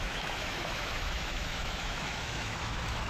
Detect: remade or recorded remade